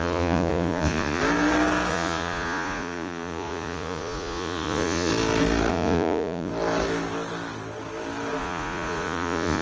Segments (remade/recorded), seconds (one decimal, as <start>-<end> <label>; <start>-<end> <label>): 0.0-1.2 remade; 1.2-1.9 recorded; 1.9-5.1 remade; 5.1-5.7 recorded; 5.7-6.5 remade; 6.5-8.4 recorded; 8.4-9.6 remade